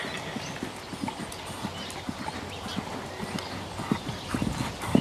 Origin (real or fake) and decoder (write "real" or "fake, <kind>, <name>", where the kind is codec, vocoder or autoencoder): real